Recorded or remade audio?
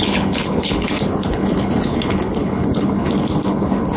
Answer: remade